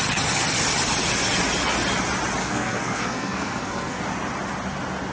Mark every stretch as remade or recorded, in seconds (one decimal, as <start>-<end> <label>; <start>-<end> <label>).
0.0-2.4 recorded; 2.4-4.0 remade; 4.0-5.1 recorded